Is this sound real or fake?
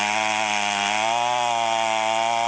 real